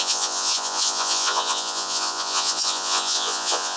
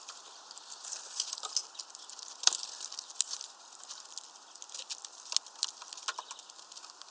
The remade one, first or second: first